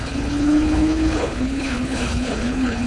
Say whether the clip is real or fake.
fake